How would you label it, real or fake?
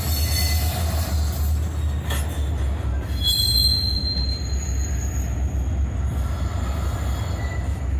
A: real